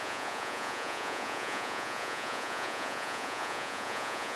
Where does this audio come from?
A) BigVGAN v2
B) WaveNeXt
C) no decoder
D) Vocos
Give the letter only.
D